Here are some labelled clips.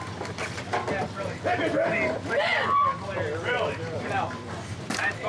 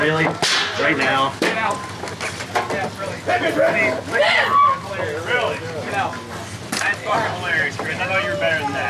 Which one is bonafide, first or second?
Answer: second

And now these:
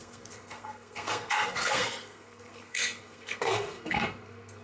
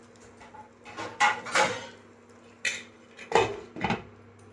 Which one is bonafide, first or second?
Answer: second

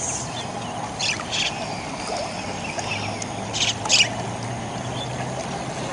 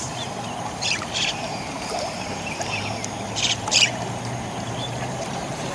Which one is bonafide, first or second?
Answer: first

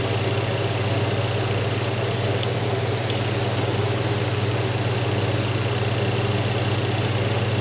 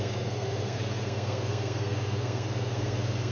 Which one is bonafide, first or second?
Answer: first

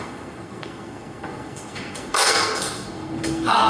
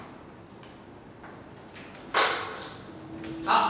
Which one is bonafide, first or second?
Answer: second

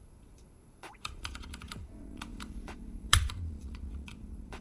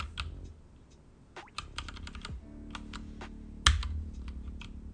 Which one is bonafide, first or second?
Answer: second